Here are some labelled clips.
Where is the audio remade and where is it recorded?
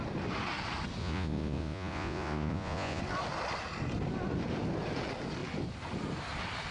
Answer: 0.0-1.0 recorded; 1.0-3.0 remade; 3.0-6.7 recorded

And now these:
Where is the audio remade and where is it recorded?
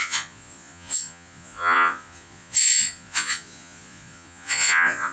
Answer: 0.0-5.1 remade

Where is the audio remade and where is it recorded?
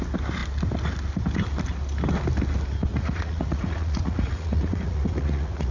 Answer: 0.0-2.9 recorded; 2.9-5.7 remade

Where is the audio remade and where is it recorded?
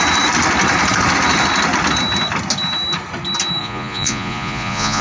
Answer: 0.0-3.6 recorded; 3.6-5.0 remade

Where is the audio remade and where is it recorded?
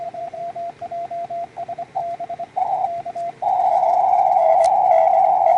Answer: 0.0-0.4 remade; 0.4-3.7 recorded; 3.7-4.5 remade; 4.5-5.6 recorded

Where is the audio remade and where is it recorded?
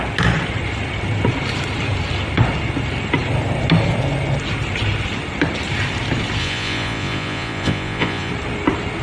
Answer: 0.0-6.4 recorded; 6.4-8.3 remade; 8.3-9.0 recorded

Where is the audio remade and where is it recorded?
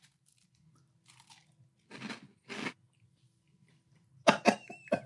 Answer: 0.0-5.1 recorded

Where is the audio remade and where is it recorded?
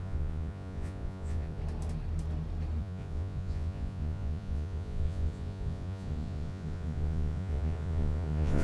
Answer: 0.0-1.6 remade; 1.6-2.8 recorded; 2.8-8.6 remade